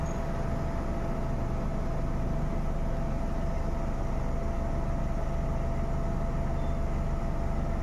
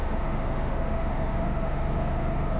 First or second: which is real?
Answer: first